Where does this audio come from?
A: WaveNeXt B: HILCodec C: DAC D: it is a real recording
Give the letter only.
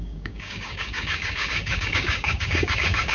C